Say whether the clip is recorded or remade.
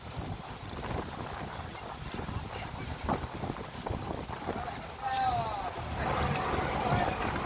recorded